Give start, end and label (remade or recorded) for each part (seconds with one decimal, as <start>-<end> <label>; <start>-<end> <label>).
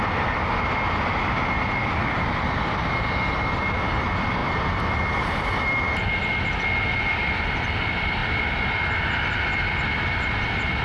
0.0-10.8 recorded